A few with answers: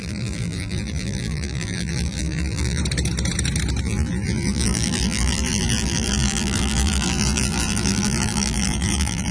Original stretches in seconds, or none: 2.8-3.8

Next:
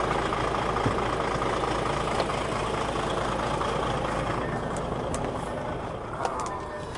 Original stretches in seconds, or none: 0.0-2.3; 6.0-7.0

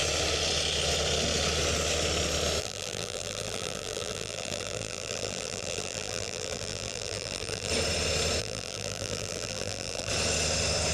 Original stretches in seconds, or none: 0.0-2.6; 7.7-8.4; 10.1-10.9

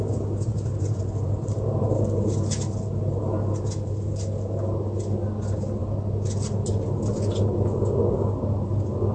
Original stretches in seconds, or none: 0.0-0.5; 2.0-9.1

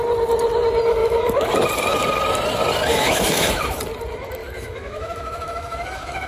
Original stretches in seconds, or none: 0.0-1.0; 1.5-2.9; 3.8-4.4